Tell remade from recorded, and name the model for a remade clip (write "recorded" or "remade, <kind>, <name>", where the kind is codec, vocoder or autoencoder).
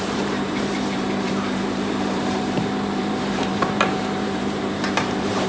remade, vocoder, BigVGAN v2